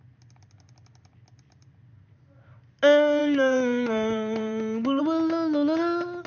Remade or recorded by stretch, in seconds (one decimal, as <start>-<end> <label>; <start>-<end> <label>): 0.0-3.2 recorded; 3.2-5.0 remade; 5.0-6.3 recorded